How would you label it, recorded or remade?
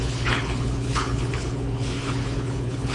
remade